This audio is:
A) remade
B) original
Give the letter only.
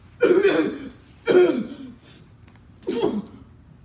B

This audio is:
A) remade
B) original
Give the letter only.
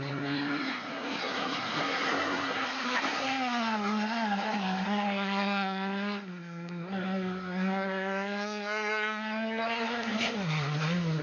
A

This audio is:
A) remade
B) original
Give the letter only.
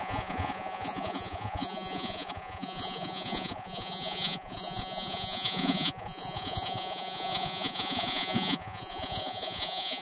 A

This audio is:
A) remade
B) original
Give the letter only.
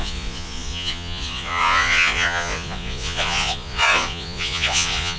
A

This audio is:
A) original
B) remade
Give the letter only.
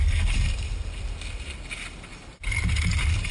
A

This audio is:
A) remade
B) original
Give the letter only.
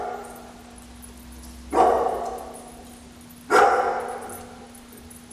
B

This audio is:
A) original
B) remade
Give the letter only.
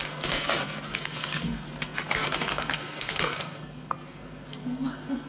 B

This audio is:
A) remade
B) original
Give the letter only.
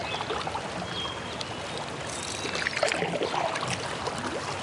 B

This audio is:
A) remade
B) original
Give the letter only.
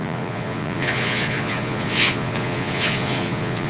A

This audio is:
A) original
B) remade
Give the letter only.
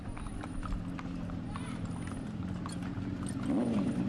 A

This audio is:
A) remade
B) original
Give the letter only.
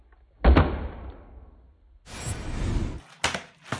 B